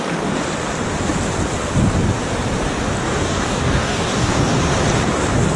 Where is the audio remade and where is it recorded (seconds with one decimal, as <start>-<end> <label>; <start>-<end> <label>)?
0.0-3.0 recorded; 3.0-4.6 remade; 4.6-5.6 recorded